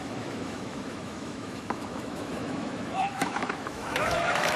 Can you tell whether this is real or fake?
fake